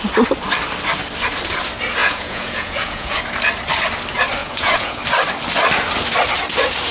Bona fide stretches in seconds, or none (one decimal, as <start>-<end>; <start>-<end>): 0.0-2.0; 3.2-4.4; 5.0-6.9